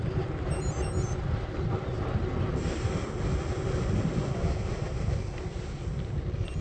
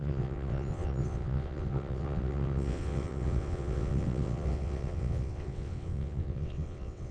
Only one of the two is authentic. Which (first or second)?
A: first